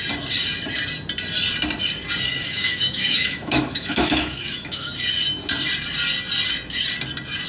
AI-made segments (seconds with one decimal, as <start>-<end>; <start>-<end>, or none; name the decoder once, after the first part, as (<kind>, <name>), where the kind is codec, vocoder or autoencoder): 2.4-4.9 (autoencoder, DAC-VAE)